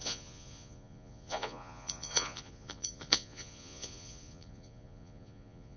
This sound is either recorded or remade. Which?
remade